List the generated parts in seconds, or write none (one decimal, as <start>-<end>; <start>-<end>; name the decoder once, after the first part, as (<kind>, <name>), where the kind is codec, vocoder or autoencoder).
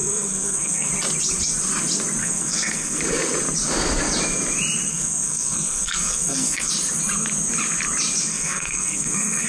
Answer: 0.0-0.9 (codec, SNAC); 2.2-3.0; 4.9-6.7; 8.3-9.5